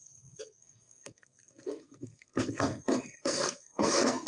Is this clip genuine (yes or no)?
no